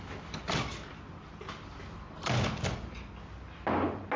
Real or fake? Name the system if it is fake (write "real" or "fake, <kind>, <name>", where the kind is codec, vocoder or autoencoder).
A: real